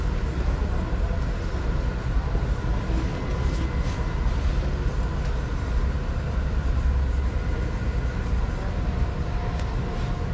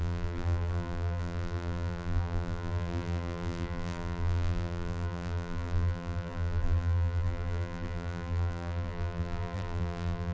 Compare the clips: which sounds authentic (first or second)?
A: first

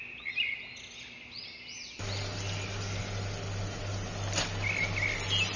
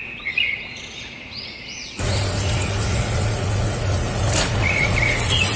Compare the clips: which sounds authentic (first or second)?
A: first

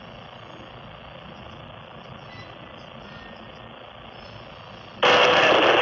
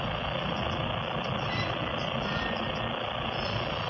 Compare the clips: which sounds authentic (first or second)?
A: first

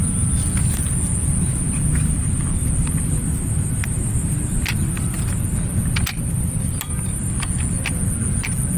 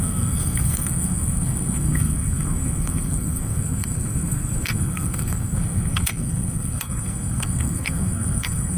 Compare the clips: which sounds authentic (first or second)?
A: first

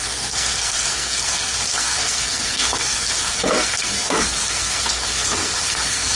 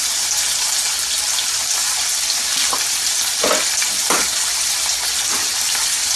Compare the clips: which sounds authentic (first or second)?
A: second